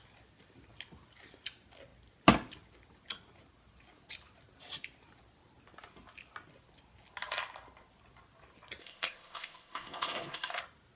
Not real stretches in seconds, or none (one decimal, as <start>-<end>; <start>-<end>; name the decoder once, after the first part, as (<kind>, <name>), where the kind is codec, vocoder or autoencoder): 8.8-10.6 (codec, ZipCodec)